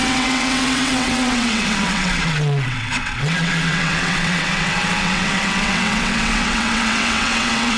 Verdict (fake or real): fake